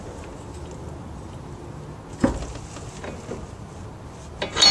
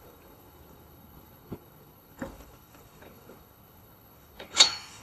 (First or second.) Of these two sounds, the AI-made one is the second